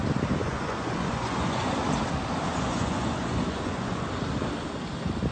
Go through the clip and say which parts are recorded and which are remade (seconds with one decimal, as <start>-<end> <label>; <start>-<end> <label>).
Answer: 0.0-0.4 recorded; 0.4-1.7 remade; 1.7-2.5 recorded; 2.5-4.1 remade; 4.1-5.3 recorded